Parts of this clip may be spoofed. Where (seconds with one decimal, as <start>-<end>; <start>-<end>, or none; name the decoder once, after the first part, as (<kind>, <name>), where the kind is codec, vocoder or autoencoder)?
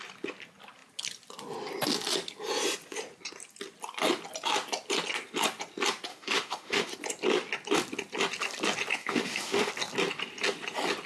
6.1-6.9 (autoencoder, DAC-VAE); 8.9-9.7